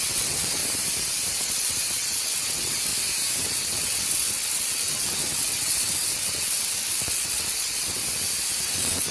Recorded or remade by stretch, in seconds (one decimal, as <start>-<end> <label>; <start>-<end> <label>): 0.0-0.6 remade; 0.6-1.3 recorded; 1.3-2.9 remade; 2.9-3.4 recorded; 3.4-8.0 remade; 8.0-8.6 recorded; 8.6-9.1 remade